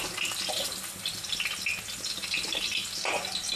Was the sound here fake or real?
real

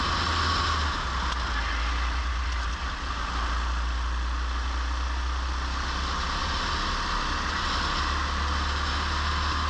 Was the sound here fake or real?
real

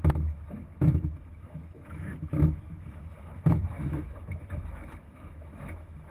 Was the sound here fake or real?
fake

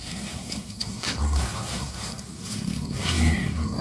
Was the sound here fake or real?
fake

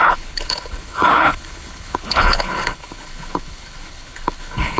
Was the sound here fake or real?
fake